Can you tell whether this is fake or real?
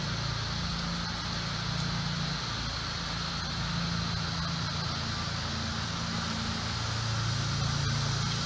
real